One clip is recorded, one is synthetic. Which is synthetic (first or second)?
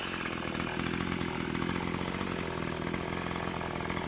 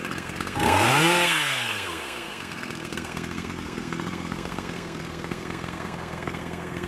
second